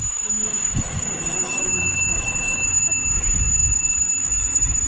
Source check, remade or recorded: remade